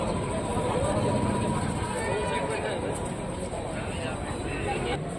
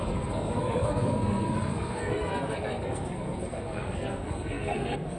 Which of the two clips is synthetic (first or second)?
second